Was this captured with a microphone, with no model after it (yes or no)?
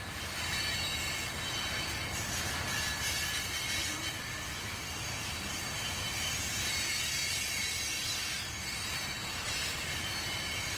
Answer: yes